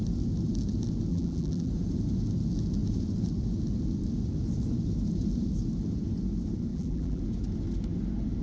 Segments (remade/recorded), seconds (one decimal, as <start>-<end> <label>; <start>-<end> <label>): 0.0-1.1 recorded; 1.1-1.7 remade; 1.7-6.7 recorded; 6.7-7.2 remade; 7.2-8.4 recorded